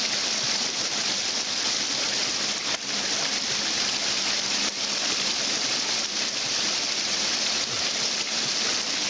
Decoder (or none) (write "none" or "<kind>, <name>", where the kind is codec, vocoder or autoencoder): none